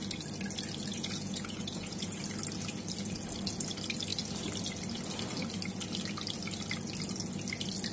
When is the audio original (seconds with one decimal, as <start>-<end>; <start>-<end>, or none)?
0.0-0.9; 2.2-7.9